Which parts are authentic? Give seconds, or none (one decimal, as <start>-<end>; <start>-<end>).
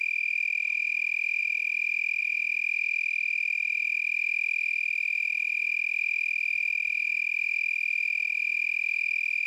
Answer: 0.0-9.5